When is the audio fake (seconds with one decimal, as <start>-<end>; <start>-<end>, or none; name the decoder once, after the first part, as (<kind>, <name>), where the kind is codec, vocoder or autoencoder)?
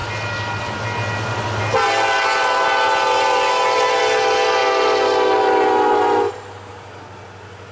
4.6-6.3 (vocoder, BigVGAN v2)